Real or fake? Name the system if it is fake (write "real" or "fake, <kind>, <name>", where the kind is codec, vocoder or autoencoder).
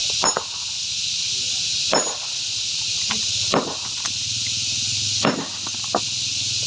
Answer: real